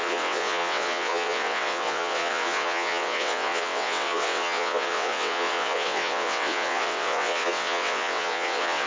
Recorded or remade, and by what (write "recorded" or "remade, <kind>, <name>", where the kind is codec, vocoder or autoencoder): remade, vocoder, WaveNeXt